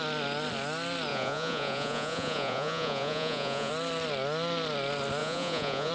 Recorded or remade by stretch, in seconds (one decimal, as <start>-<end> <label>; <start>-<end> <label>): 0.0-1.1 recorded; 1.1-3.7 remade; 3.7-5.2 recorded; 5.2-5.9 remade